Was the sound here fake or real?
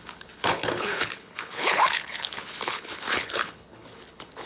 fake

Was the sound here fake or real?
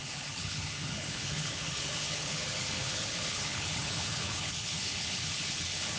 fake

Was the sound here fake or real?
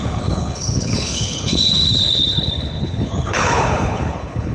fake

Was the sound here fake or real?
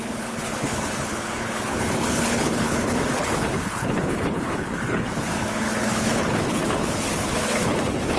fake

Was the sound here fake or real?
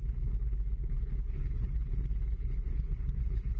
fake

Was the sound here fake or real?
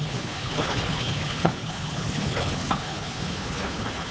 fake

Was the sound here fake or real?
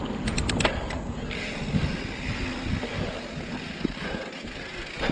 real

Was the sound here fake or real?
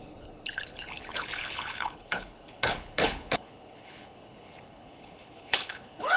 fake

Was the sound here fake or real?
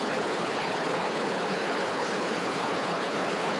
fake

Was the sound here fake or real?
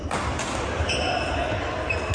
real